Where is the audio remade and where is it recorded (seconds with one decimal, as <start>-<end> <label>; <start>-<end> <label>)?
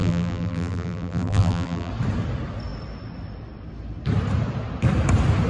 0.0-1.9 remade; 1.9-5.5 recorded